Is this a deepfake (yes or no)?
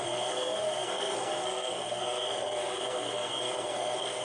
yes